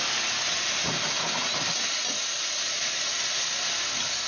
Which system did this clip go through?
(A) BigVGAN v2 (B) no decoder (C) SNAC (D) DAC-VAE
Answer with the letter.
B